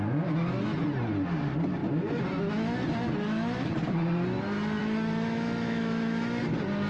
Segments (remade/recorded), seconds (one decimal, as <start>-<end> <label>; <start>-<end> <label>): 0.0-4.8 recorded; 4.8-6.4 remade; 6.4-6.9 recorded